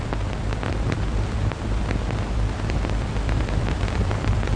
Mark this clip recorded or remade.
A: remade